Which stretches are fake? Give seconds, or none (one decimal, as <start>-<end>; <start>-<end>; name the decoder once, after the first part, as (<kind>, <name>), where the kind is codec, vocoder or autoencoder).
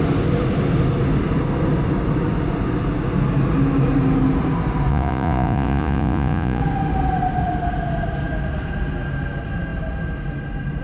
4.9-6.6 (vocoder, Vocos)